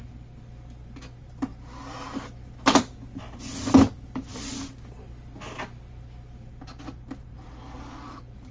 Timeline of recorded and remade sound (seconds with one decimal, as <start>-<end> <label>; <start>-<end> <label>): 0.0-8.5 recorded